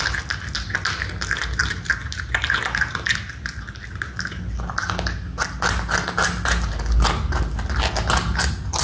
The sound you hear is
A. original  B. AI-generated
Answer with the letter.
A